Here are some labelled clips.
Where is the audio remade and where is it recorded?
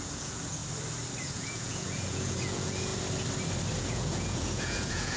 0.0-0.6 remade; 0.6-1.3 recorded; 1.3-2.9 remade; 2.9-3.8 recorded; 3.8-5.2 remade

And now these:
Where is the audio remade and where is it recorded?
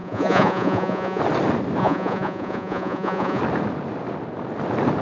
0.0-1.2 remade; 1.2-1.8 recorded; 1.8-3.4 remade; 3.4-5.0 recorded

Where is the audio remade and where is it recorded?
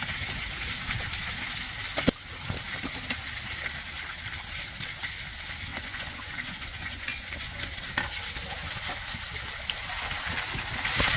0.0-5.7 recorded; 5.7-7.7 remade; 7.7-11.2 recorded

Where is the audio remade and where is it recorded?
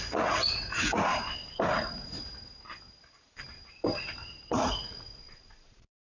0.0-1.1 remade; 1.1-4.5 recorded; 4.5-6.0 remade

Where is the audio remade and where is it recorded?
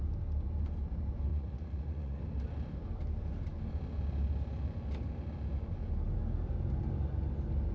0.0-1.3 recorded; 1.3-2.2 remade; 2.2-7.7 recorded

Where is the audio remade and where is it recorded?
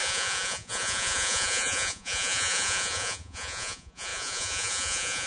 0.0-5.3 remade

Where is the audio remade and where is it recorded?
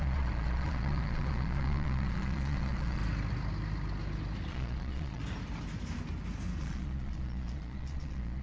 0.0-3.0 remade; 3.0-4.5 recorded; 4.5-5.2 remade; 5.2-6.6 recorded; 6.6-8.4 remade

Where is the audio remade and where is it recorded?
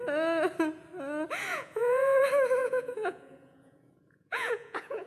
0.0-1.5 recorded; 1.5-2.2 remade; 2.2-2.6 recorded; 2.6-5.1 remade